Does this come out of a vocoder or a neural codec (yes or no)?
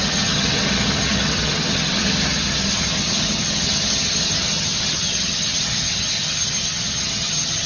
yes